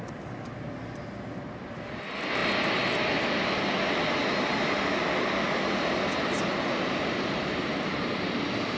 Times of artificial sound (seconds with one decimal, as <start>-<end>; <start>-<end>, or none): none